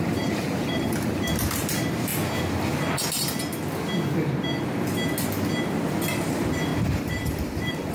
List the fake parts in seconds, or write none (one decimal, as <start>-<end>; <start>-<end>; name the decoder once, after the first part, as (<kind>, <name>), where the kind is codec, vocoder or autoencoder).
0.0-2.1 (vocoder, BigVGAN v2); 6.1-6.7; 7.5-7.9